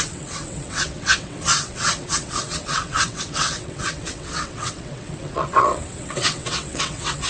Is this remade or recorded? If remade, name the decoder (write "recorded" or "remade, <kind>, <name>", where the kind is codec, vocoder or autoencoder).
remade, vocoder, WaveNeXt